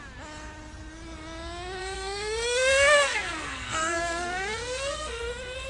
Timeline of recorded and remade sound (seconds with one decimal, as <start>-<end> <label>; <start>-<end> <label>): 0.0-1.8 recorded; 1.8-5.2 remade; 5.2-5.7 recorded